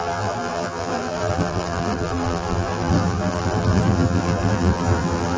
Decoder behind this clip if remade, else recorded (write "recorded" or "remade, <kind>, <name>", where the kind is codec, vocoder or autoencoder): remade, vocoder, BigVGAN v2